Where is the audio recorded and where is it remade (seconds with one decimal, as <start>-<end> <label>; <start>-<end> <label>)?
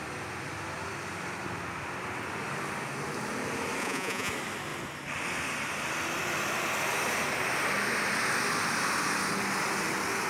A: 0.0-3.8 recorded; 3.8-4.3 remade; 4.3-10.3 recorded